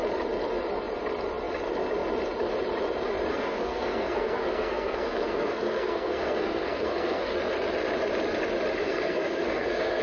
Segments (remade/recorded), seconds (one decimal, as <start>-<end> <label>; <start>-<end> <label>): 0.0-3.3 recorded; 3.3-7.3 remade; 7.3-8.8 recorded; 8.8-10.0 remade